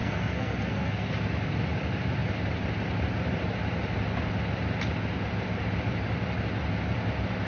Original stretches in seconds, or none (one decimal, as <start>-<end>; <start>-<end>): 1.1-7.5